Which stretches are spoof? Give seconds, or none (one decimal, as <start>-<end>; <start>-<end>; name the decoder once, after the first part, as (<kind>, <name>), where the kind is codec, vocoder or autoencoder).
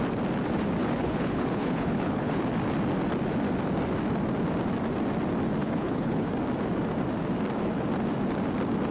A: 0.8-2.4 (codec, HILCodec); 5.6-6.3